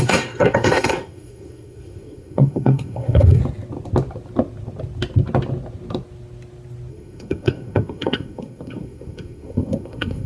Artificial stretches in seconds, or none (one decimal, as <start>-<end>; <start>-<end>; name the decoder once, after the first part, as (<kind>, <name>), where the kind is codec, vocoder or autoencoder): 0.0-3.4 (codec, SNAC); 6.9-10.3